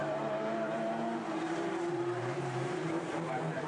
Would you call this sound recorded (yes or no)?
no